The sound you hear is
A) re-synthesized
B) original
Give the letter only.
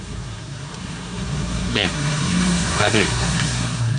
A